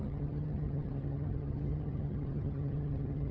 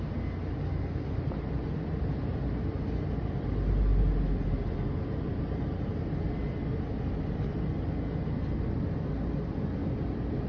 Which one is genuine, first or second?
second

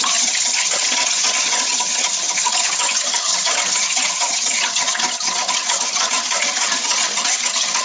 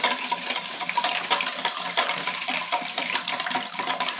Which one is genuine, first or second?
second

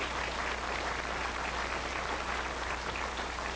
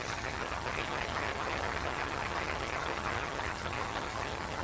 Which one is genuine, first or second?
first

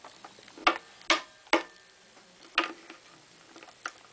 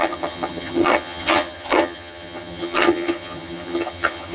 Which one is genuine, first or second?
first